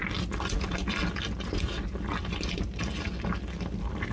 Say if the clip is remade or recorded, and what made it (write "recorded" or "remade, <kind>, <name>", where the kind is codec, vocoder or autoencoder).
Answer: recorded